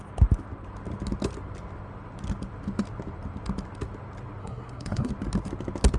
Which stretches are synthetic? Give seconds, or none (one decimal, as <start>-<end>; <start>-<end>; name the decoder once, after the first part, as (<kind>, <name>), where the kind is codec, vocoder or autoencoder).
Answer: 4.4-5.1 (codec, SNAC)